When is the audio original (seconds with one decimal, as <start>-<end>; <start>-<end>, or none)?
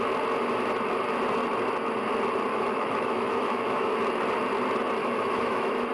0.0-2.5; 3.9-5.0